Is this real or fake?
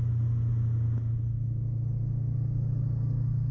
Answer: real